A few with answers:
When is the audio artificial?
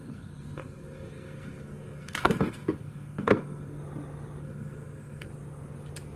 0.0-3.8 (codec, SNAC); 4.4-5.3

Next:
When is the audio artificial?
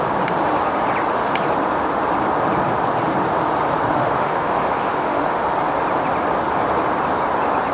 3.9-5.5 (autoencoder, DAC-VAE)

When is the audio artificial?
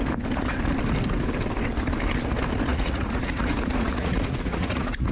2.7-5.1 (vocoder, Vocos)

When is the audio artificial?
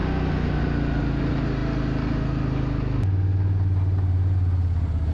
none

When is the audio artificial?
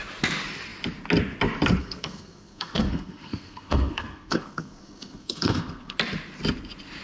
1.8-6.0 (codec, SNAC)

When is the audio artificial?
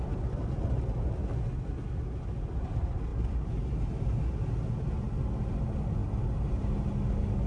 none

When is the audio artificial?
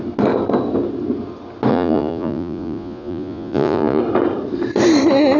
1.7-4.0 (vocoder, Vocos)